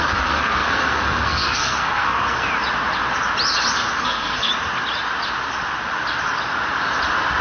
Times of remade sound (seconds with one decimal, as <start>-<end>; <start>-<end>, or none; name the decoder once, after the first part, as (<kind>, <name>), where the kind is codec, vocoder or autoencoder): 0.0-2.5 (codec, SNAC); 4.0-4.5